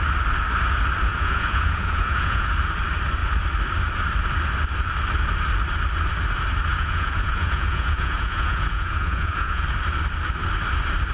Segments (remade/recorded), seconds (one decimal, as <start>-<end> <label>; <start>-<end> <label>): 0.0-1.1 recorded; 1.1-2.5 remade; 2.5-6.7 recorded; 6.7-9.6 remade; 9.6-11.1 recorded